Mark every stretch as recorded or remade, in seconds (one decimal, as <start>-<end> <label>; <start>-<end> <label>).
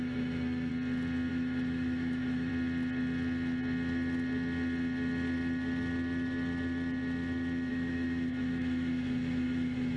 0.0-0.7 remade; 0.7-1.3 recorded; 1.3-2.5 remade; 2.5-7.7 recorded; 7.7-10.0 remade